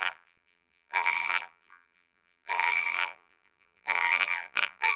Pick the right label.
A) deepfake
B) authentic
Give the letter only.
A